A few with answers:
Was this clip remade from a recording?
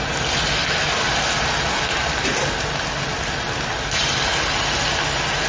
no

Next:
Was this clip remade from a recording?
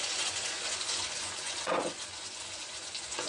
yes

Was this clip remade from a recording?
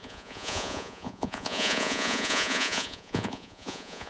yes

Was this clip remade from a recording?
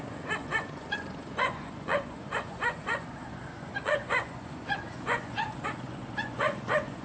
yes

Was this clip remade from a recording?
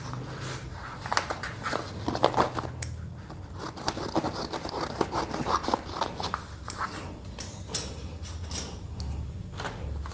no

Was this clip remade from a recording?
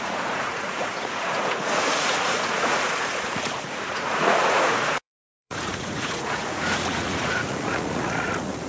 yes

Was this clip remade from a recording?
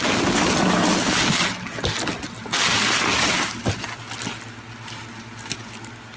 no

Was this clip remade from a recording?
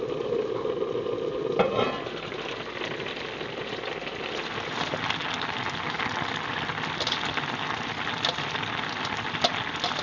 no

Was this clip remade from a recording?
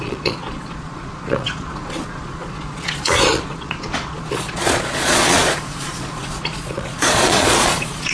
yes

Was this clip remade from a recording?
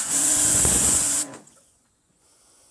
yes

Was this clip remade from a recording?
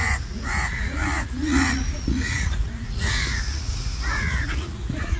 yes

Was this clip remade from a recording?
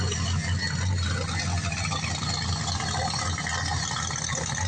no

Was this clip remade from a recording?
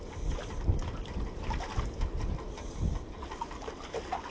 no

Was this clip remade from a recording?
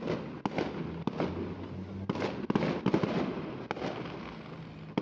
no